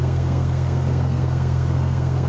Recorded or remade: remade